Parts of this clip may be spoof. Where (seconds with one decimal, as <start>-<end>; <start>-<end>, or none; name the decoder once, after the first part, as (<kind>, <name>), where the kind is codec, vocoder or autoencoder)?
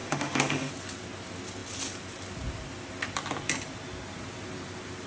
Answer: 0.0-0.7 (autoencoder, DAC-VAE)